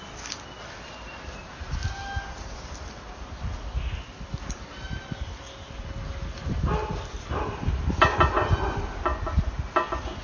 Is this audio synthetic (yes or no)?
no